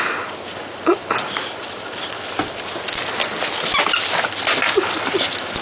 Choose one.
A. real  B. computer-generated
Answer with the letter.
A